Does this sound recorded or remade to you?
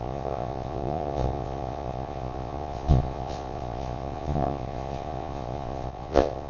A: remade